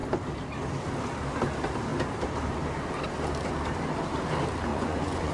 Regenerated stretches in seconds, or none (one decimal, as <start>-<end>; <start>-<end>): 4.7-5.3